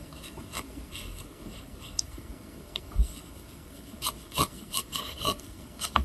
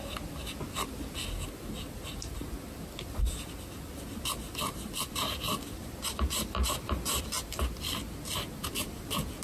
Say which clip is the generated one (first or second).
first